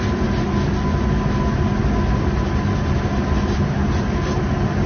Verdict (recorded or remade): recorded